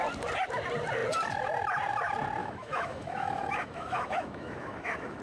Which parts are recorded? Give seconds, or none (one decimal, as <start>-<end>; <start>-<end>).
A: 0.0-2.4